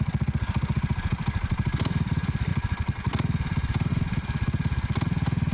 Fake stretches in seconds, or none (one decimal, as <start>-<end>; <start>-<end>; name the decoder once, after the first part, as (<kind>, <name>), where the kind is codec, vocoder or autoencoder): none